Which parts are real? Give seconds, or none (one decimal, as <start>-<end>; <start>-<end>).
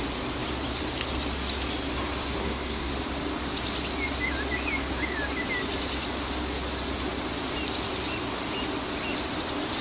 0.0-2.4; 2.9-9.8